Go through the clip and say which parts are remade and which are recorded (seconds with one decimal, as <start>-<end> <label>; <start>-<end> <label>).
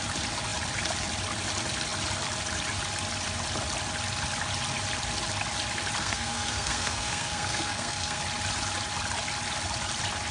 0.0-6.0 recorded; 6.0-8.2 remade; 8.2-10.3 recorded